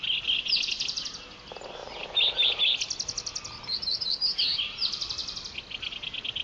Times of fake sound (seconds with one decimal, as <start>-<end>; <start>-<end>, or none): none